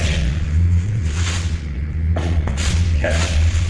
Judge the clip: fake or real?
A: fake